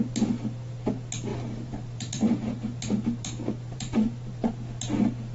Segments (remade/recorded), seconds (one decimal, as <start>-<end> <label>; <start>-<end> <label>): 0.0-1.3 recorded; 1.3-4.5 remade; 4.5-5.3 recorded